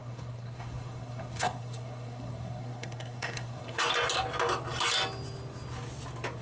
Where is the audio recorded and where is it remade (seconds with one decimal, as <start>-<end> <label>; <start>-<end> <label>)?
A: 0.0-3.8 remade; 3.8-6.4 recorded